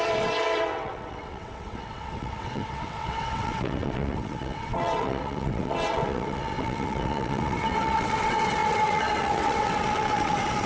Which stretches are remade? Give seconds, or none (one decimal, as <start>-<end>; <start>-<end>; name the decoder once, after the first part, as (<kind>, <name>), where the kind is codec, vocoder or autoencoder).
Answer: 0.0-10.7 (vocoder, WaveNeXt)